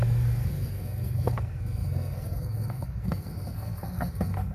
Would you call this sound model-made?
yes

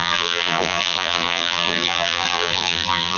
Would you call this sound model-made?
yes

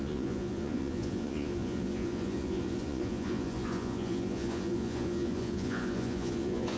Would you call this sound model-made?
yes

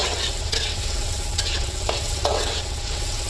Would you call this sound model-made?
yes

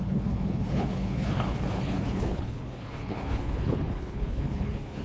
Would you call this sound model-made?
yes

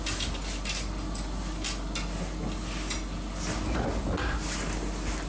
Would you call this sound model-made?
no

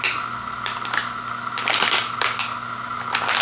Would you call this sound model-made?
no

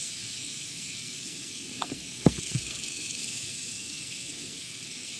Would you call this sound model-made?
yes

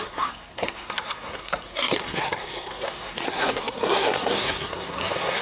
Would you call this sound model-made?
yes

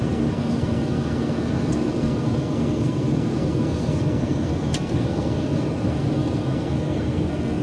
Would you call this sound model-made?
yes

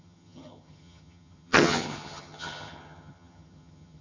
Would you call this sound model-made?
yes